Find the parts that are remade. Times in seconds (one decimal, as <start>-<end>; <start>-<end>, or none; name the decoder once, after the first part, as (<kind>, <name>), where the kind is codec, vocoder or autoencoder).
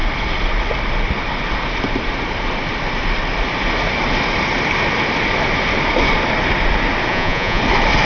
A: 7.1-7.6 (vocoder, Vocos)